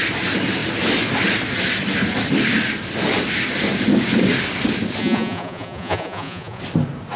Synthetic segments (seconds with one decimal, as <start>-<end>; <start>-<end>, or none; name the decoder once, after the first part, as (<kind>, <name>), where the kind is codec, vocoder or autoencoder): 5.0-6.6 (vocoder, Vocos)